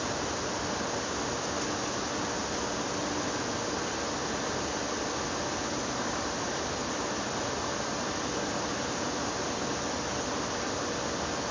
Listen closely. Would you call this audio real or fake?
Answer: real